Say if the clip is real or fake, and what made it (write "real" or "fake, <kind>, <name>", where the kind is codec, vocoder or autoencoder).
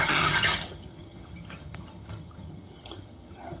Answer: fake, vocoder, HiFi-GAN